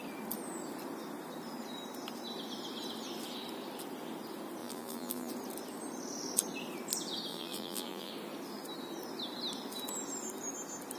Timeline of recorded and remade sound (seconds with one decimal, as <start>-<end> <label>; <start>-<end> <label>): 0.0-4.6 recorded; 4.6-5.3 remade; 5.3-7.3 recorded; 7.3-8.1 remade; 8.1-11.0 recorded